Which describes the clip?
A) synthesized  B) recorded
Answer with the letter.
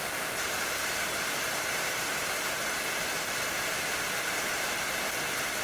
B